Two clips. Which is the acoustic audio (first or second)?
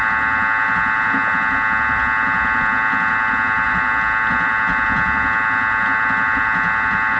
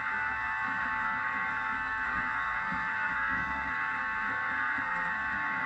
first